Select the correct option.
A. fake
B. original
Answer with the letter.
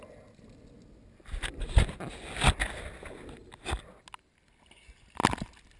B